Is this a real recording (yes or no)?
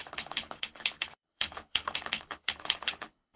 no